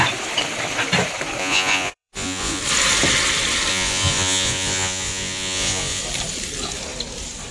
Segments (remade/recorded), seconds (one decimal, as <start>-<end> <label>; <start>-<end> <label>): 0.0-1.4 recorded; 1.4-2.6 remade; 2.6-3.7 recorded; 3.7-6.0 remade; 6.0-7.5 recorded